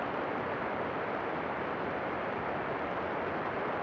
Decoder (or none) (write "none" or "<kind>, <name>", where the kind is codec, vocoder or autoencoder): vocoder, BigVGAN v2